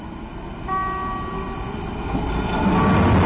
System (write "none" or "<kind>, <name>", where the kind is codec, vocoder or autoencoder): none